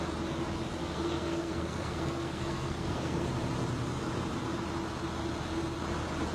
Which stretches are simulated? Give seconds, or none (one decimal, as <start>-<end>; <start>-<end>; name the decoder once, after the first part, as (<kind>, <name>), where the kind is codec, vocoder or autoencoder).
0.8-3.3 (codec, SNAC)